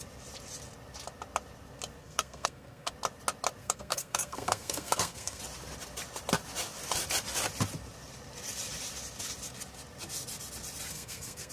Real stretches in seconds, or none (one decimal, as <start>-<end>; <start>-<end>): 0.0-2.0; 2.9-3.6; 5.4-10.9